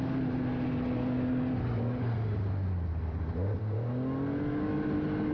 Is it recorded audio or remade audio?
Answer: recorded